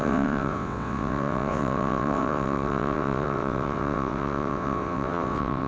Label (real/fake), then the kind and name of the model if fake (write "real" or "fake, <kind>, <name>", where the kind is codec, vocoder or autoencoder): fake, vocoder, WaveNeXt